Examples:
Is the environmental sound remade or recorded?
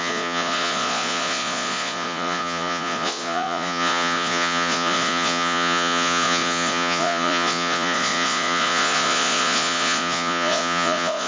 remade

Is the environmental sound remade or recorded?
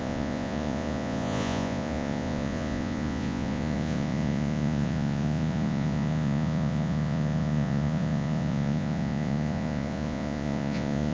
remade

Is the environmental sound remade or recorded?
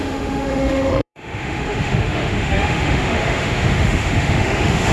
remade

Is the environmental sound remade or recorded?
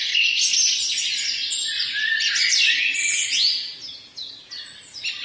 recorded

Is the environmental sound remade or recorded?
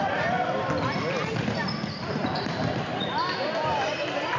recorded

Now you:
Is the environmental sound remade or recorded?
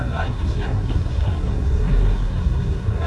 remade